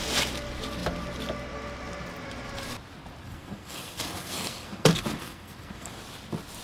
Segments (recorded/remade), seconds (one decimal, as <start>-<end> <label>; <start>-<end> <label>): 0.0-3.2 recorded; 3.2-6.0 remade; 6.0-6.6 recorded

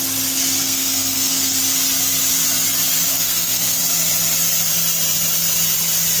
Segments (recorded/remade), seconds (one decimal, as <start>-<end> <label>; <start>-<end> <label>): 0.0-0.6 recorded; 0.6-1.6 remade; 1.6-3.1 recorded; 3.1-3.8 remade; 3.8-6.2 recorded

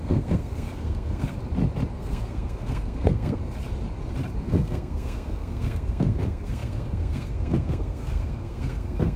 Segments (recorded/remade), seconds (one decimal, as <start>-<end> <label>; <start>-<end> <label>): 0.0-1.4 remade; 1.4-1.9 recorded; 1.9-3.4 remade; 3.4-4.4 recorded; 4.4-9.2 remade

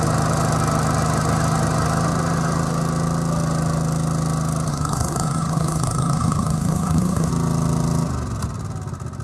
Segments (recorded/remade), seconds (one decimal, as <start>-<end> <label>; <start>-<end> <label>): 0.0-4.7 recorded; 4.7-7.3 remade; 7.3-9.2 recorded